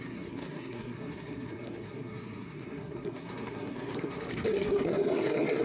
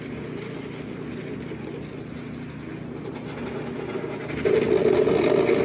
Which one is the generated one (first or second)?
first